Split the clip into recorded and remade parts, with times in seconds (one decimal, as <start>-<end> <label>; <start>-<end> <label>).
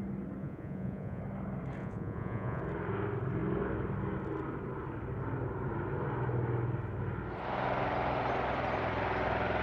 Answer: 0.0-0.4 recorded; 0.4-1.2 remade; 1.2-1.8 recorded; 1.8-2.6 remade; 2.6-9.6 recorded